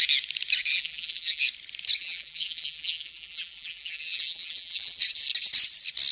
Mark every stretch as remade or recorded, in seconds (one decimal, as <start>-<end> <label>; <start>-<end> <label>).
0.0-0.7 recorded; 0.7-1.4 remade; 1.4-2.0 recorded; 2.0-5.0 remade; 5.0-6.1 recorded